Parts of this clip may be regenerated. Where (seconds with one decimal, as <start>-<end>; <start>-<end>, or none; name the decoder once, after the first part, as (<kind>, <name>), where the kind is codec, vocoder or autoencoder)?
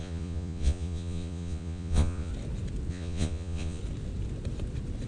0.0-2.3 (vocoder, Vocos); 2.9-3.8